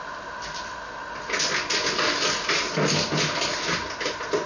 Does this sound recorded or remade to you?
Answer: recorded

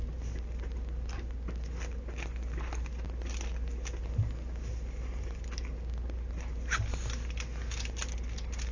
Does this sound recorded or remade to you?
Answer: recorded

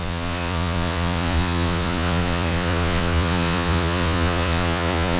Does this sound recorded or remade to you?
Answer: remade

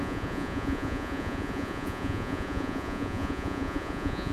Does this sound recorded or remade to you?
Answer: remade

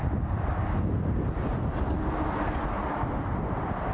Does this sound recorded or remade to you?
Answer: recorded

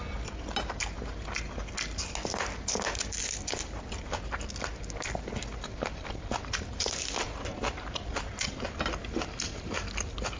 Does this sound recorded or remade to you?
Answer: recorded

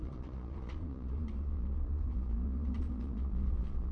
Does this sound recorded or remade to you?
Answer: remade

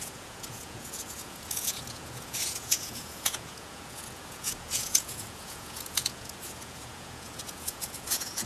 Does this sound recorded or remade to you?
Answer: remade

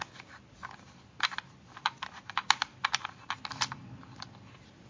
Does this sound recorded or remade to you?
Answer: recorded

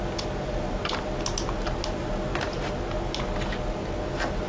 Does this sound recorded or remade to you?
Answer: recorded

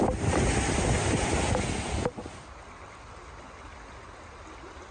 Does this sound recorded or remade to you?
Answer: recorded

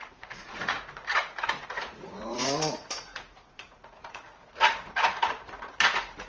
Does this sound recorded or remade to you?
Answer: remade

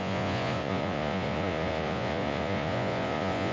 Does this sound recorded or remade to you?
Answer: remade